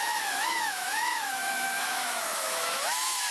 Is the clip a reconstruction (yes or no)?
yes